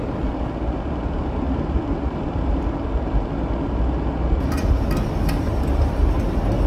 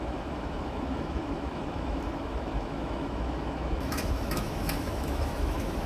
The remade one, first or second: second